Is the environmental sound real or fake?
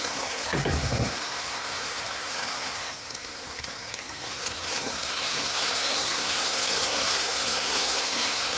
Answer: fake